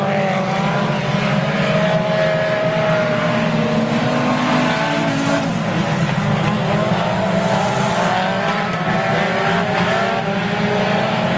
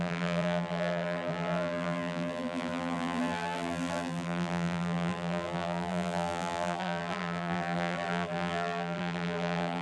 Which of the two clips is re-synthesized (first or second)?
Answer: second